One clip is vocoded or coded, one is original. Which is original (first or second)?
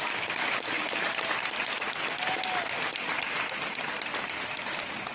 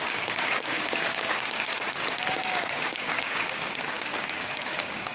first